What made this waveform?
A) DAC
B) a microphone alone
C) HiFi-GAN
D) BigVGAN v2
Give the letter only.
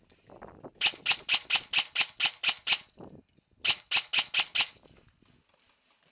B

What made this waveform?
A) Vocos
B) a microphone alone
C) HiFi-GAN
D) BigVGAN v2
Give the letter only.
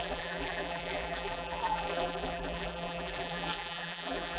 D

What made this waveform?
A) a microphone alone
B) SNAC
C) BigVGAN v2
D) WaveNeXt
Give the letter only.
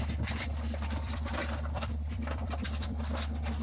C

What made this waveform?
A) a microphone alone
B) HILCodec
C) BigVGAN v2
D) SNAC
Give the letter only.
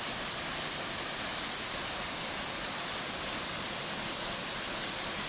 A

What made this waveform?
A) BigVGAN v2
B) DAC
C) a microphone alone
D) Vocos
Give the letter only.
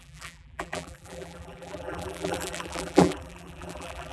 A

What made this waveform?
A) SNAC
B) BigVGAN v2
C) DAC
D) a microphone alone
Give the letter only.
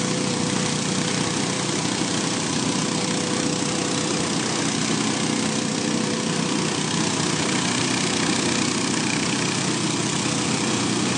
B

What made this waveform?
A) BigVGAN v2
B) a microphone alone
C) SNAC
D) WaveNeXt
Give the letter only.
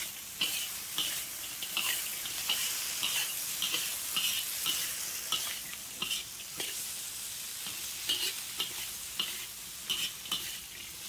B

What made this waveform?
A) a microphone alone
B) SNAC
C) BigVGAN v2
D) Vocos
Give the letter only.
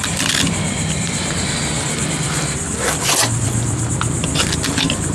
C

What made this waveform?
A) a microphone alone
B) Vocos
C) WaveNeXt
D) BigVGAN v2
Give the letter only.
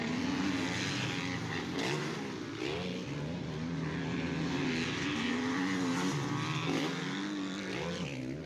A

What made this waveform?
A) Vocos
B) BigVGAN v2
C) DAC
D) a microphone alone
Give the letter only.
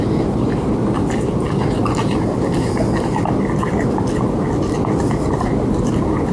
D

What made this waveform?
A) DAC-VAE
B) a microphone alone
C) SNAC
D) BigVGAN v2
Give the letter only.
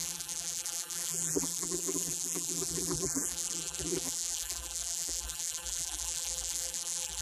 D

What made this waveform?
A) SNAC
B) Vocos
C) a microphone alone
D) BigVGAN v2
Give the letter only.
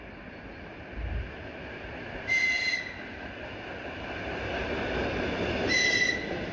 C